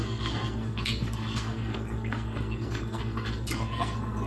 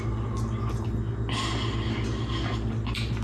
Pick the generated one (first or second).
first